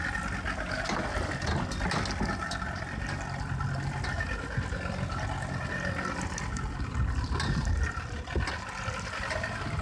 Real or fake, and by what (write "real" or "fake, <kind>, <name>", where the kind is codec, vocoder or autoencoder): real